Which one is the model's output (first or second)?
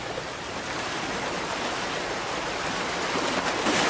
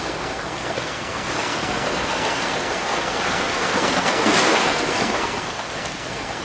second